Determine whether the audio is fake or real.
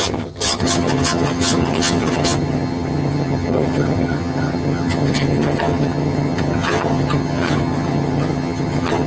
fake